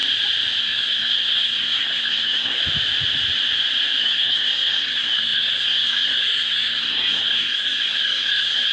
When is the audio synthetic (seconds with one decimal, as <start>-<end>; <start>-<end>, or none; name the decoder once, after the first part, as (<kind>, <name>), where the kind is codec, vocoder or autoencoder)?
0.6-2.6 (codec, SNAC); 4.0-8.7